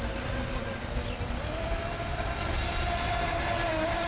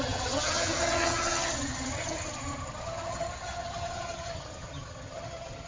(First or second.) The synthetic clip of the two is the second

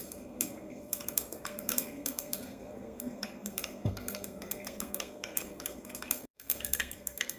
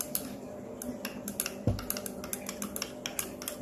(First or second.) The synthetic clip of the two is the first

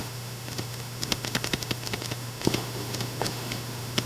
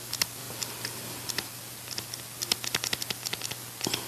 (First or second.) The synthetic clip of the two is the first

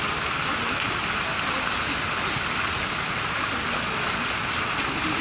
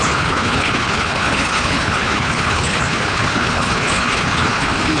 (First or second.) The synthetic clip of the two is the second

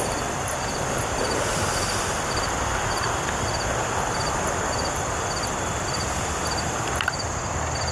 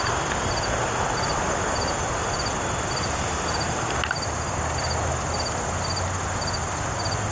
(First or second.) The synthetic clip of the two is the first